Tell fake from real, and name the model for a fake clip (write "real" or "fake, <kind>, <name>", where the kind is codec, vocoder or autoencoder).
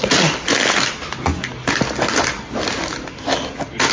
real